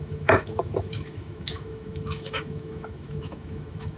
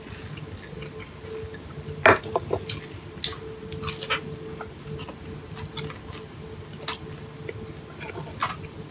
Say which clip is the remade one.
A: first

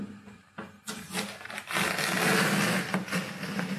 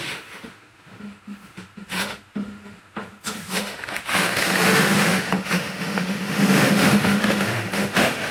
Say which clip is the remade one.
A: second